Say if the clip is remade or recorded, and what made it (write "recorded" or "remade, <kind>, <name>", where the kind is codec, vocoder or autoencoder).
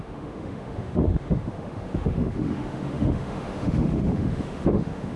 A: remade, autoencoder, DAC-VAE